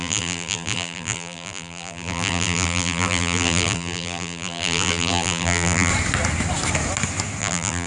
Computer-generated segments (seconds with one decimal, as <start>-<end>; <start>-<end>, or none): 0.0-5.9; 7.4-7.9